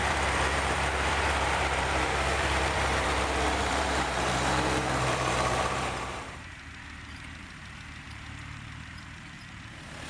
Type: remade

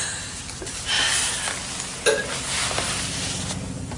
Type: recorded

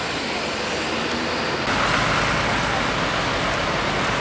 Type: recorded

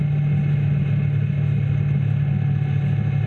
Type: recorded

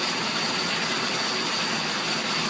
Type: recorded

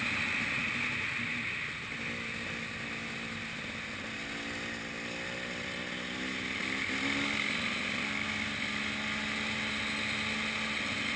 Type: recorded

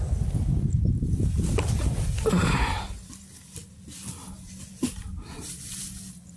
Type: recorded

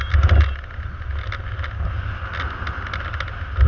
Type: recorded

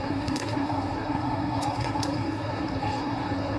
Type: remade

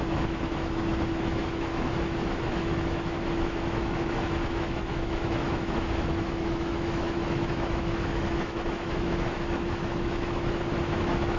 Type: remade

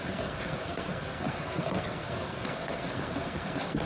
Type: remade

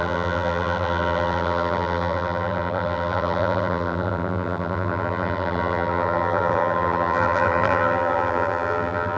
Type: remade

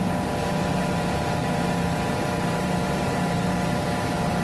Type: remade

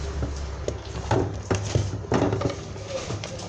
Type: remade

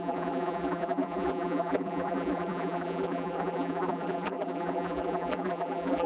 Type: remade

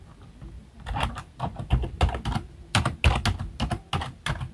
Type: recorded